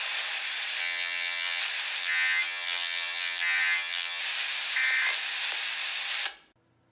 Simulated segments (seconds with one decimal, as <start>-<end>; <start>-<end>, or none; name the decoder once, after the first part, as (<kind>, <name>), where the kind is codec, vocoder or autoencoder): 0.8-1.6 (vocoder, HiFi-GAN); 2.0-4.2